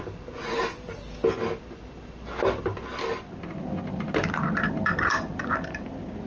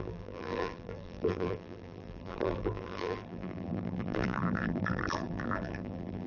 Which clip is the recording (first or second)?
first